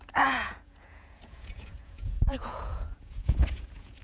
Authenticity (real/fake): fake